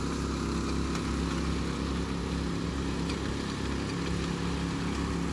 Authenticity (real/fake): real